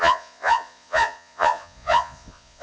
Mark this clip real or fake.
fake